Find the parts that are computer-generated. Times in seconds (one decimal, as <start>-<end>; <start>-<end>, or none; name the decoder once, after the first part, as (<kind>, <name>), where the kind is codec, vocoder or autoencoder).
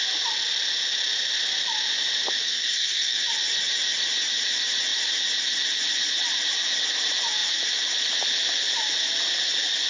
2.4-3.2 (codec, SNAC)